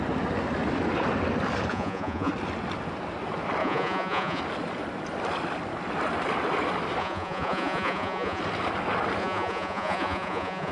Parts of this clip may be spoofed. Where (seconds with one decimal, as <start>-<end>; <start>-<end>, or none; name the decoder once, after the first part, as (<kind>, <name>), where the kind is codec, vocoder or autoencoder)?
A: 1.7-2.3 (vocoder, Vocos); 3.6-4.4; 7.0-8.4; 9.2-10.7